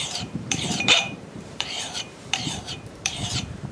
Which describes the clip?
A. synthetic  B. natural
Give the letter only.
A